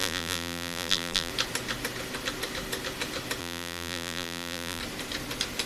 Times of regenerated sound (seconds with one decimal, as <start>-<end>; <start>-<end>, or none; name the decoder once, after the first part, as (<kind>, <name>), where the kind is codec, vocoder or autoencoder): 0.0-1.3 (vocoder, BigVGAN v2); 3.4-4.8